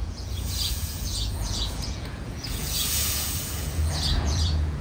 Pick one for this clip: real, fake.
fake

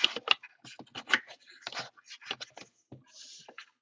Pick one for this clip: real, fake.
real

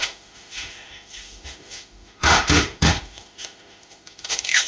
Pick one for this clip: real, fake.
fake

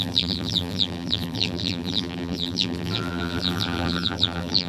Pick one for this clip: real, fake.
fake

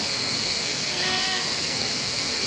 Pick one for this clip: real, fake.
fake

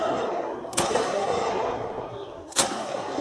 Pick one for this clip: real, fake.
fake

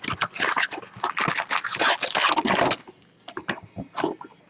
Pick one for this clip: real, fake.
real